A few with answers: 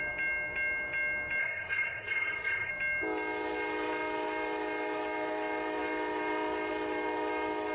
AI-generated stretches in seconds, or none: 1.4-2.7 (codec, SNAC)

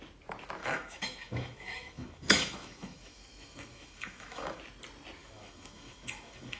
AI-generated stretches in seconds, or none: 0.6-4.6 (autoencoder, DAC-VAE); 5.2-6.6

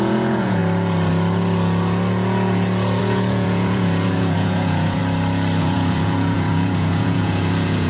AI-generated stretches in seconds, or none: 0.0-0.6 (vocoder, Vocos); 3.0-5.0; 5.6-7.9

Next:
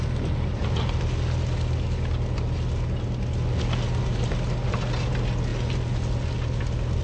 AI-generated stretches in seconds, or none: none

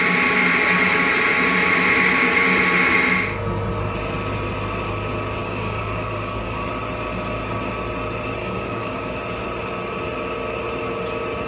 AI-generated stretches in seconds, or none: 5.4-6.7 (codec, DAC); 8.4-9.1